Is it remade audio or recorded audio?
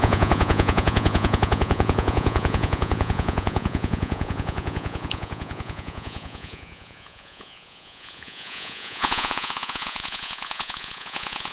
remade